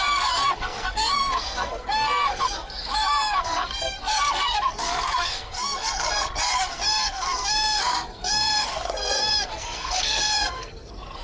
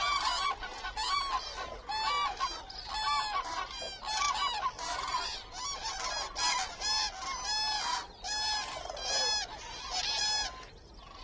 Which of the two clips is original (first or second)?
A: second